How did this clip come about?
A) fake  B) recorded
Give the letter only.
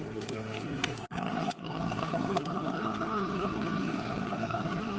A